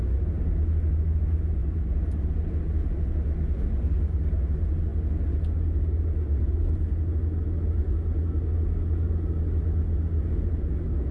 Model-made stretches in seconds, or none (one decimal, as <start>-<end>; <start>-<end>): none